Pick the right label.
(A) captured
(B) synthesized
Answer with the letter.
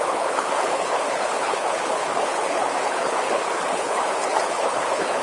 B